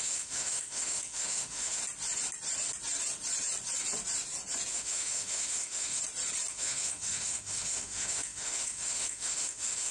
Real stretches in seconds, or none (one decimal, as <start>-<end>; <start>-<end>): 1.8-4.7; 6.0-6.5